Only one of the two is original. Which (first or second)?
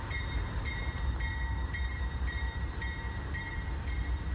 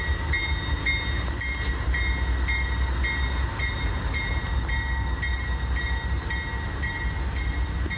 second